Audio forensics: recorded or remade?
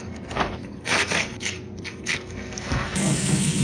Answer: remade